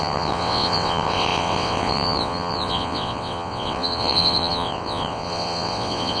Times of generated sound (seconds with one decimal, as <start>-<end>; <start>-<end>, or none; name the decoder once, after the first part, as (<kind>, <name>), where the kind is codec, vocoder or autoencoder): 0.0-6.2 (vocoder, WaveNeXt)

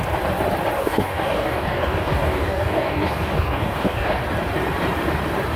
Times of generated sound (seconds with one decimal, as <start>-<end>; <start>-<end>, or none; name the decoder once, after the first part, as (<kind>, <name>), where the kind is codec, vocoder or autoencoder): 0.8-4.2 (codec, DAC)

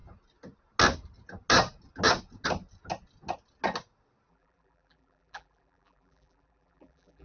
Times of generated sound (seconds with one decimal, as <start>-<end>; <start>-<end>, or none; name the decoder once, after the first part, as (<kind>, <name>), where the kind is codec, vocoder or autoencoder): 4.3-7.2 (vocoder, BigVGAN v2)

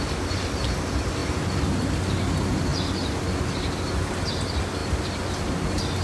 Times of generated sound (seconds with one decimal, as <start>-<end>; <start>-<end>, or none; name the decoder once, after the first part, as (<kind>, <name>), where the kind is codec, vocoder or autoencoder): none

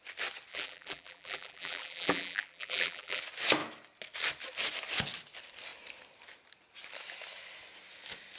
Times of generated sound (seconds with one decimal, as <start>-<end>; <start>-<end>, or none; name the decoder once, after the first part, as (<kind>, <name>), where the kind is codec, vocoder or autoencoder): 0.5-3.2 (vocoder, BigVGAN v2)

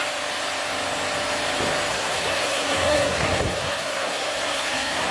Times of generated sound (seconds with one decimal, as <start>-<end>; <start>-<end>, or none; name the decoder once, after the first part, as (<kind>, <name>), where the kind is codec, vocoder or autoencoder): 1.9-5.1 (codec, SNAC)

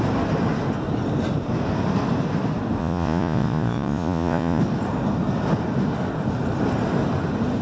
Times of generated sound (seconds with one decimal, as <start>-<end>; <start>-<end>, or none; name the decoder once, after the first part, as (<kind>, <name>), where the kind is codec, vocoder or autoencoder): 2.8-4.6 (vocoder, Vocos)